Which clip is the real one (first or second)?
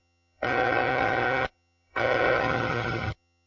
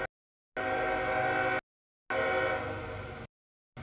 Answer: second